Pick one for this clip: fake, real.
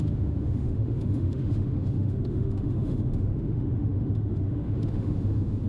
fake